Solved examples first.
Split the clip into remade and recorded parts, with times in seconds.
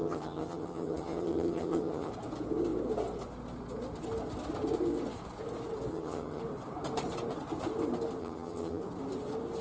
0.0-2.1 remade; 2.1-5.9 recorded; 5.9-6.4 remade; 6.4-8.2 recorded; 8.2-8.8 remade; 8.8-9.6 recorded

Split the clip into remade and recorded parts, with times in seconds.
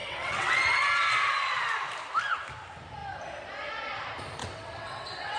0.0-0.5 remade; 0.5-4.4 recorded; 4.4-5.4 remade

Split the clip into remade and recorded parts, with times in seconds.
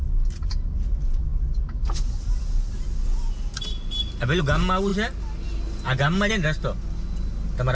0.0-7.7 recorded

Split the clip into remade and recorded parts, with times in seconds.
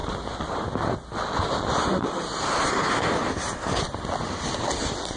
0.0-5.2 recorded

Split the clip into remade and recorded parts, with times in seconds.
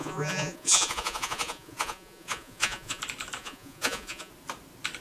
0.0-3.0 remade; 3.0-3.4 recorded; 3.4-4.3 remade; 4.3-5.0 recorded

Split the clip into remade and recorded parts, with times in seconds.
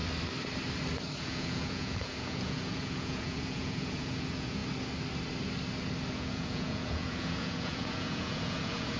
0.0-1.2 recorded; 1.2-4.6 remade; 4.6-6.1 recorded; 6.1-9.0 remade